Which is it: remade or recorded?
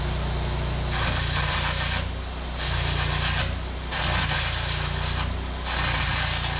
recorded